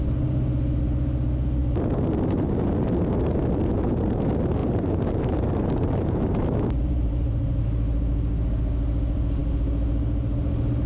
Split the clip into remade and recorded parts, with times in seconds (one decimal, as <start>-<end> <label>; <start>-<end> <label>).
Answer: 0.0-4.6 recorded; 4.6-7.6 remade; 7.6-10.9 recorded